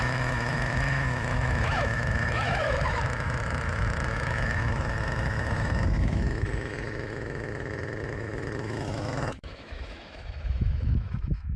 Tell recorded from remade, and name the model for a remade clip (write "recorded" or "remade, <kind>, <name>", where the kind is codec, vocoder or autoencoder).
remade, autoencoder, DAC-VAE